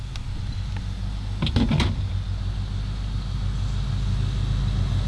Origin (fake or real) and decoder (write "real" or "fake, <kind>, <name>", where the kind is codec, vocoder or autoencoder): real